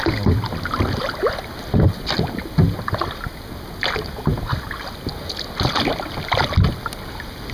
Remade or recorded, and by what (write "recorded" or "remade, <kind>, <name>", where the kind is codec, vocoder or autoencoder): recorded